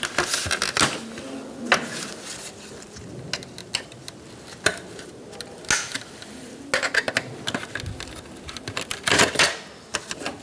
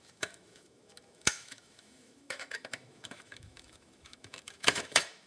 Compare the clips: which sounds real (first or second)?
first